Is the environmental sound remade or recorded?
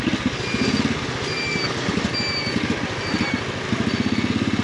recorded